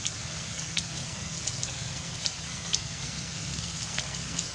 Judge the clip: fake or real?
fake